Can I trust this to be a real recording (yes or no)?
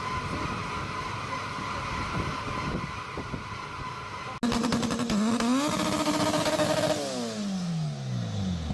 yes